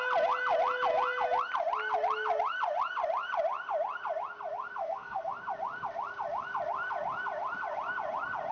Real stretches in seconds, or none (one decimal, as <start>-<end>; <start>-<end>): 0.0-4.8; 5.3-8.5